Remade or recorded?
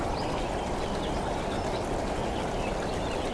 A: recorded